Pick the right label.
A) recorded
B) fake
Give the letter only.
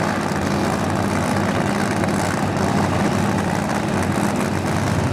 A